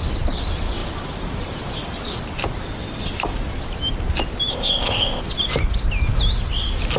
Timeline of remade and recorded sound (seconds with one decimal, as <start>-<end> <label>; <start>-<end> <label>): 0.0-4.5 recorded; 4.5-5.2 remade; 5.2-7.0 recorded